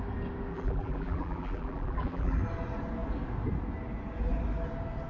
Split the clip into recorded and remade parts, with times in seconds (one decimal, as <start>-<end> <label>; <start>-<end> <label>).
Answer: 0.0-0.5 recorded; 0.5-2.4 remade; 2.4-5.1 recorded